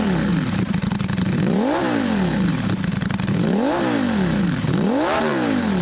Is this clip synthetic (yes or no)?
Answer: yes